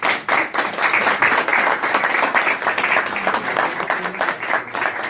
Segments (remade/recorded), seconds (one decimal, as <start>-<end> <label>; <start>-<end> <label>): 0.0-5.1 recorded